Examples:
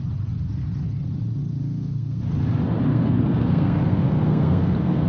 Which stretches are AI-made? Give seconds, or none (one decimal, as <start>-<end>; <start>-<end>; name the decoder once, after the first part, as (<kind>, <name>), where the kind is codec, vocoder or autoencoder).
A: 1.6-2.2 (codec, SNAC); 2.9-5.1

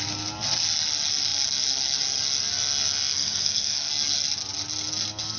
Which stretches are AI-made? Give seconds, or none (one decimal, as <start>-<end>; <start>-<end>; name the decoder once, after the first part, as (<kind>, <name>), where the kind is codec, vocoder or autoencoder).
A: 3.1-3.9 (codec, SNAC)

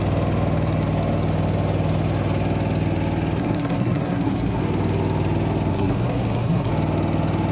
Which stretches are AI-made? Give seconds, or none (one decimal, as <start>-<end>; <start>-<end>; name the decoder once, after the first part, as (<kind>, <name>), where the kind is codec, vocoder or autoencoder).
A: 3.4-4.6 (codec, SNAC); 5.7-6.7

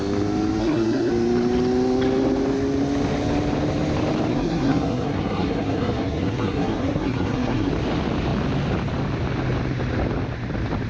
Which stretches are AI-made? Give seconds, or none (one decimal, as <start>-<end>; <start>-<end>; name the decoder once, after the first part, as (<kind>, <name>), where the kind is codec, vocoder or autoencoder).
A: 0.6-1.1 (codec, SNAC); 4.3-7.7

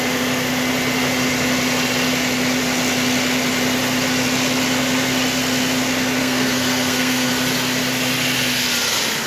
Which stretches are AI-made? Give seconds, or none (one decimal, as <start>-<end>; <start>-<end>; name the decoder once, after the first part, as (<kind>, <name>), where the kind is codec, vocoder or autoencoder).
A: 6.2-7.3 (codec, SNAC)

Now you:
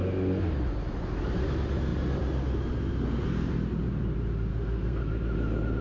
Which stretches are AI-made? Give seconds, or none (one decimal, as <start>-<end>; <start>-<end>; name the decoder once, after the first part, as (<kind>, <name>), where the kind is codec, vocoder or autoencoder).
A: 4.5-5.0 (codec, SNAC)